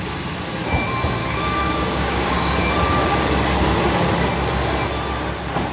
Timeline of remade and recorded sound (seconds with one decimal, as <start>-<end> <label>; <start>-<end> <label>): 0.0-1.2 recorded; 1.2-2.6 remade; 2.6-5.7 recorded

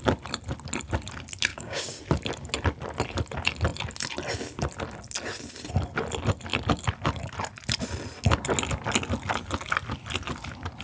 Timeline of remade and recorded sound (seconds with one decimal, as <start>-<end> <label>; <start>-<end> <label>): 0.0-1.5 recorded; 1.5-2.0 remade; 2.0-10.8 recorded

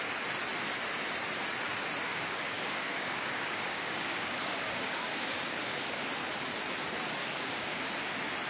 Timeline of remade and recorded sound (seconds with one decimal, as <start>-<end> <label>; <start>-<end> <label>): 0.0-2.1 recorded; 2.1-6.1 remade; 6.1-7.2 recorded; 7.2-7.8 remade; 7.8-8.5 recorded